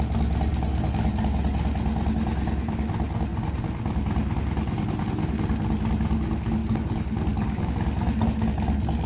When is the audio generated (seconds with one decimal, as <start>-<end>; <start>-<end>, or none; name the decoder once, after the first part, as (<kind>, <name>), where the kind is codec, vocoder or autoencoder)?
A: 0.5-1.1 (codec, DAC); 6.6-7.7

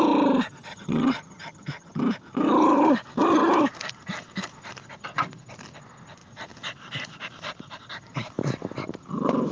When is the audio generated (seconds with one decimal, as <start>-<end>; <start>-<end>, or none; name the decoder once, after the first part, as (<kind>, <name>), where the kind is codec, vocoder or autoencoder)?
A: 0.7-2.0 (vocoder, HiFi-GAN)